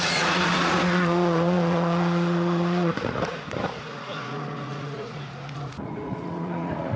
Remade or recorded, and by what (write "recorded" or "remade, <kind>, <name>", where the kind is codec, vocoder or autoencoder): remade, vocoder, Vocos